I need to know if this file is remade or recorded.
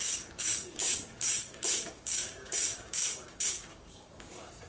remade